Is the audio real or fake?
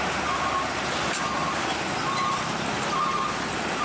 real